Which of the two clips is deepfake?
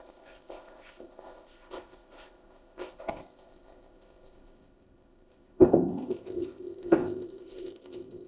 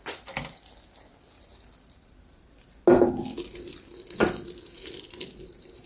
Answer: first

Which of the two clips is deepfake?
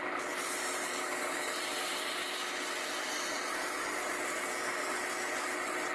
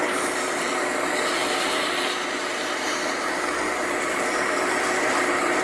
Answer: second